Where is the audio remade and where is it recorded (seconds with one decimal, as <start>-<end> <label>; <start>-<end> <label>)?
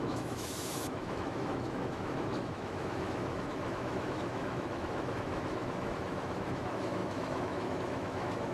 0.0-8.5 remade